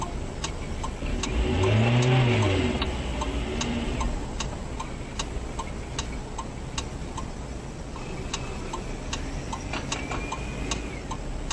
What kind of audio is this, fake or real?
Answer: real